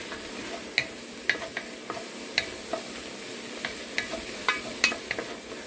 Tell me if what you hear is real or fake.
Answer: real